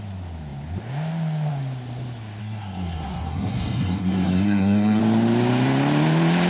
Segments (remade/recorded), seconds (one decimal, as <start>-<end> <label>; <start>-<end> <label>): 0.0-2.4 recorded; 2.4-5.0 remade; 5.0-6.5 recorded